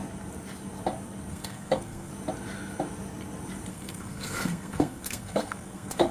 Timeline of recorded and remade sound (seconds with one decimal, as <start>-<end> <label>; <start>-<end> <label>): 0.0-1.3 recorded; 1.3-2.1 remade; 2.1-3.7 recorded; 3.7-6.1 remade